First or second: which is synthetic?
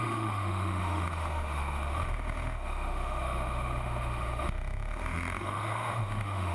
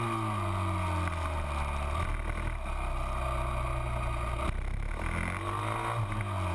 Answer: first